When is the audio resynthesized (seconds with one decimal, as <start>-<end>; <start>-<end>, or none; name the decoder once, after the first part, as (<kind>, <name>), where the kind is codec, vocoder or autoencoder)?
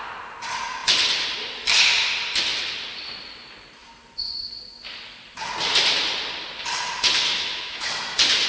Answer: 7.3-7.9 (autoencoder, DAC-VAE)